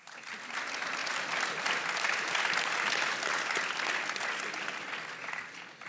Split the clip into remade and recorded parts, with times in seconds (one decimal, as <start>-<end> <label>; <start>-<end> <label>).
0.0-5.9 recorded